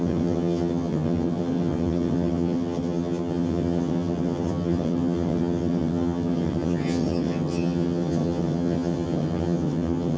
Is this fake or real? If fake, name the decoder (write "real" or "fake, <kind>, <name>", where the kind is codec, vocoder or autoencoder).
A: fake, vocoder, HiFi-GAN